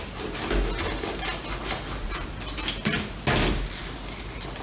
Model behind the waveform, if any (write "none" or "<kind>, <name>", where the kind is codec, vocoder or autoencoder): none